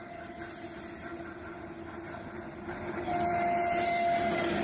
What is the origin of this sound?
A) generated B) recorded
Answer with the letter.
B